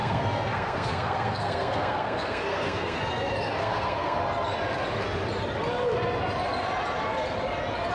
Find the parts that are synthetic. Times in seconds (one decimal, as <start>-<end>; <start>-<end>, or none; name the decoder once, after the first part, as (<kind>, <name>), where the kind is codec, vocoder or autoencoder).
0.0-3.0 (codec, SNAC); 3.6-4.2